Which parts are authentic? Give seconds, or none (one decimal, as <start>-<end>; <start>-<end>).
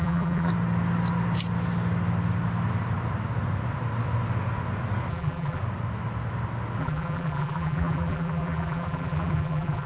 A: 0.5-5.1; 5.6-6.8